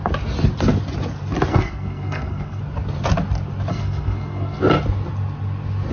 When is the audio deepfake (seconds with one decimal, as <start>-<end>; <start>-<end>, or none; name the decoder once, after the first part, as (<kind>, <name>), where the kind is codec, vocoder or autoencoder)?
1.5-2.6 (codec, SNAC); 3.7-4.6